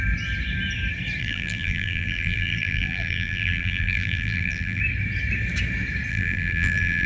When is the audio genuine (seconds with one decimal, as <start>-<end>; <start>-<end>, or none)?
0.0-1.2; 4.8-6.1